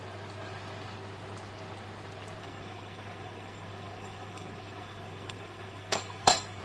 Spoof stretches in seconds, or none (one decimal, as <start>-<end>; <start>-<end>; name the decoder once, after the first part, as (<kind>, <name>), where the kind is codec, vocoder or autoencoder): 2.4-6.6 (codec, SNAC)